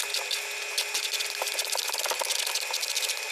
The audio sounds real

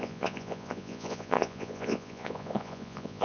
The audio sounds fake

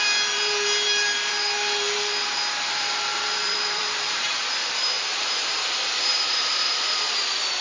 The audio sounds fake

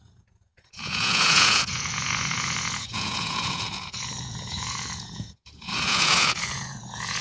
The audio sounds fake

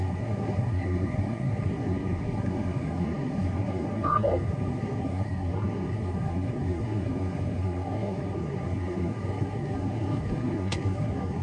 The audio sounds fake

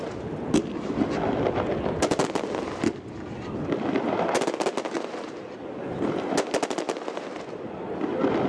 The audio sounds real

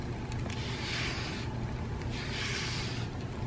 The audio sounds real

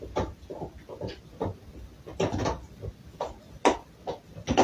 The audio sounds real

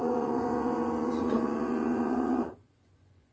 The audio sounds fake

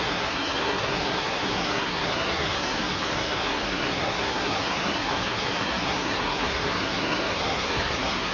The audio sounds fake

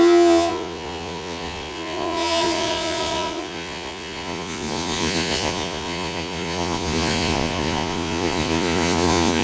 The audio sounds fake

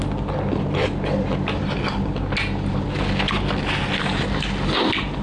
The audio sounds real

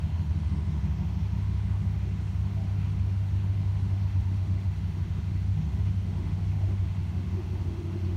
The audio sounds fake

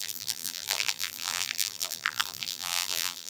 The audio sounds fake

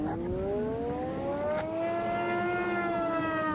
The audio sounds real